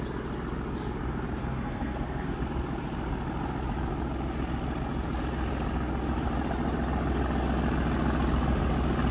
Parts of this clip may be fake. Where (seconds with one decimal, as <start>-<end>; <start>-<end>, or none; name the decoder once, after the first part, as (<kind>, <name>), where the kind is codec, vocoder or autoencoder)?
1.4-2.4 (codec, SNAC)